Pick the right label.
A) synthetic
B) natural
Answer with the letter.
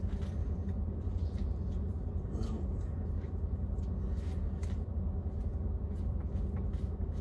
A